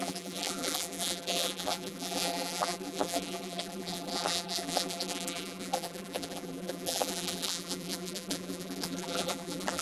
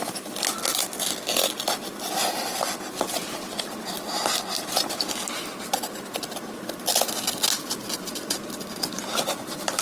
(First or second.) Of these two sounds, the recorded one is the second